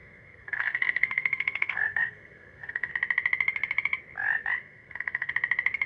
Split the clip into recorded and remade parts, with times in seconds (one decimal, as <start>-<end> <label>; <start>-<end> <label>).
0.0-2.9 remade; 2.9-4.6 recorded; 4.6-5.3 remade; 5.3-5.9 recorded